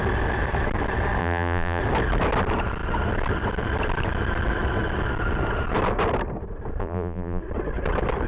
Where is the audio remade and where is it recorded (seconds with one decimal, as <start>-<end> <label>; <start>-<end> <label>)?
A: 0.0-1.2 recorded; 1.2-1.8 remade; 1.8-6.8 recorded; 6.8-7.4 remade; 7.4-8.3 recorded